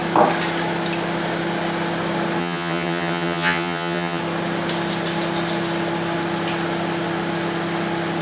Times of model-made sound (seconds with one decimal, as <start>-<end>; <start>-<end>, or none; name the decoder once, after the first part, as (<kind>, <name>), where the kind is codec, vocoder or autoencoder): 2.4-4.2 (vocoder, HiFi-GAN)